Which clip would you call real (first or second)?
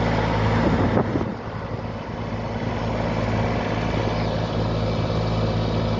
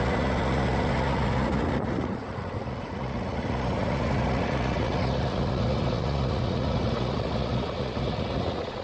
first